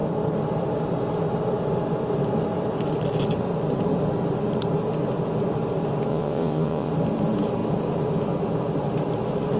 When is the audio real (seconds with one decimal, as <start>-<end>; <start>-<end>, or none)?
0.0-6.1; 6.9-9.6